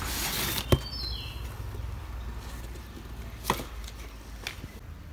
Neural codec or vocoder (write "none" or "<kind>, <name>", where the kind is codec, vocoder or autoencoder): none